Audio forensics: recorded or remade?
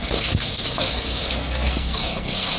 remade